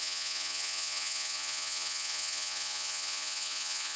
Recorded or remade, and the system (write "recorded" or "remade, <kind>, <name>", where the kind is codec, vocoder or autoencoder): remade, vocoder, Vocos